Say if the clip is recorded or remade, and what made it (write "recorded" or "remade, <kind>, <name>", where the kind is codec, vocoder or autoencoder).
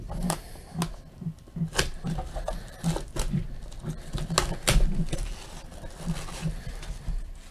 recorded